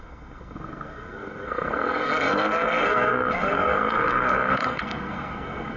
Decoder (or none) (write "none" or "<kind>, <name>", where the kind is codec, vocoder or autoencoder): codec, SNAC